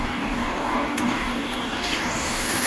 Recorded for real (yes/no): no